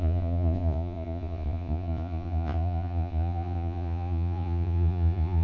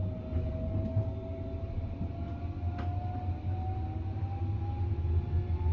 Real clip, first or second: second